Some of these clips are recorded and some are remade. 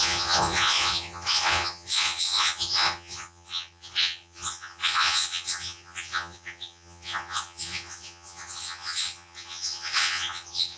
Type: remade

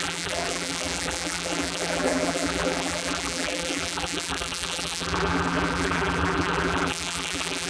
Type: remade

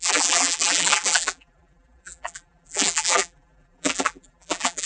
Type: remade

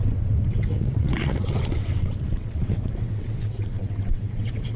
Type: remade